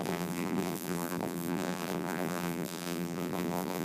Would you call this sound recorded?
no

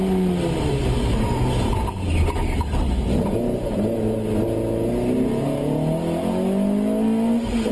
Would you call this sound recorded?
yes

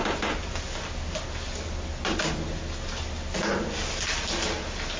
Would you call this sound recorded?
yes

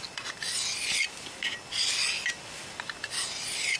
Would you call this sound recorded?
yes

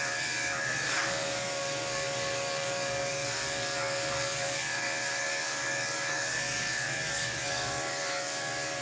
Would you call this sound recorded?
no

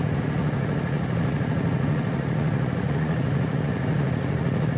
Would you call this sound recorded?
no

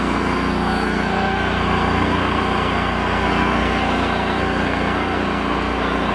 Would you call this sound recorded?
no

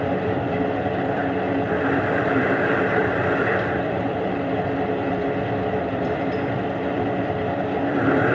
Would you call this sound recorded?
no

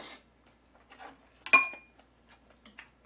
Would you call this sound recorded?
yes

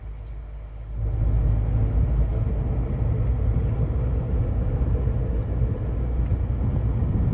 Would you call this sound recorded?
yes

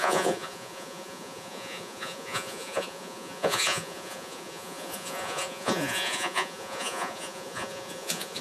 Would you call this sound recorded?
no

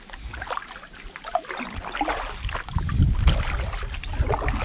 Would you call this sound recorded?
yes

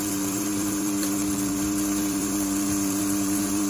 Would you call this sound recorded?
no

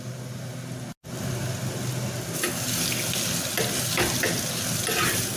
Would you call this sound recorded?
yes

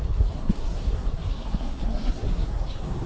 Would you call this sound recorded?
no